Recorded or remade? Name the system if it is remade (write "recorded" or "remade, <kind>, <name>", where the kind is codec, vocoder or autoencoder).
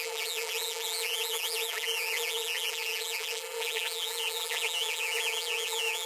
remade, vocoder, BigVGAN v2